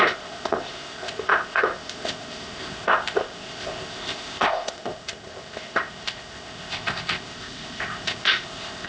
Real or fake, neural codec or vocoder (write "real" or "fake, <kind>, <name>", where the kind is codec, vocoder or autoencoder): fake, codec, ZipCodec